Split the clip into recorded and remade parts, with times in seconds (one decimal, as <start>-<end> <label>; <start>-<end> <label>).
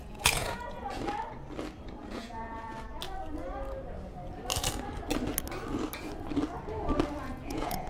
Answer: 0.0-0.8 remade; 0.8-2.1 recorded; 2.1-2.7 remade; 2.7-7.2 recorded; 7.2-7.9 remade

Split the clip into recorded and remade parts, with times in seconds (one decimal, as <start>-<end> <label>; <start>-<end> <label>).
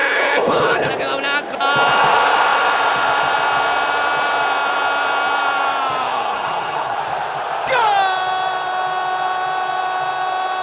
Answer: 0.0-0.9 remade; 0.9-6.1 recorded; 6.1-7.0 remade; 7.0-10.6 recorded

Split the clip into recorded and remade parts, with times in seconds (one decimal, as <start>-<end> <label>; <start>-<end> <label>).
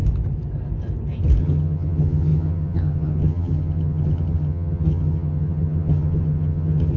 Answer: 0.0-1.4 recorded; 1.4-7.0 remade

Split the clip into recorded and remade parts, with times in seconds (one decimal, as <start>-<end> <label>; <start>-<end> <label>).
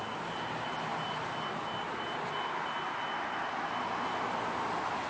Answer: 0.0-5.1 recorded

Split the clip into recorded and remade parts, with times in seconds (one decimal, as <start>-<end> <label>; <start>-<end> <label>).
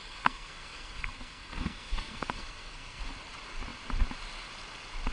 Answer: 0.0-3.0 remade; 3.0-5.1 recorded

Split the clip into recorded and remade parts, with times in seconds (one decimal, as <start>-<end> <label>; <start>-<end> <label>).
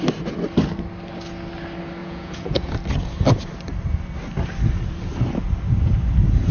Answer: 0.0-2.0 recorded; 2.0-2.7 remade; 2.7-6.5 recorded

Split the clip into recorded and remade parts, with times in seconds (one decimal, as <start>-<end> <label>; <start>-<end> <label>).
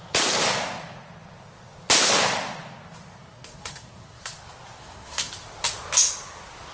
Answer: 0.0-3.2 recorded; 3.2-4.2 remade; 4.2-4.8 recorded; 4.8-5.3 remade; 5.3-6.7 recorded